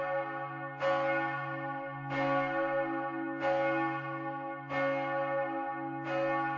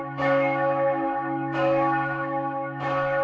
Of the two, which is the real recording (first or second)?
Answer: first